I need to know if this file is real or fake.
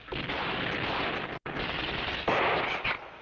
real